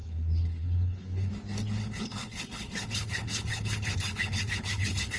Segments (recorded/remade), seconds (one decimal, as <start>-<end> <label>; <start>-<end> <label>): 0.0-1.3 remade; 1.3-1.8 recorded; 1.8-5.2 remade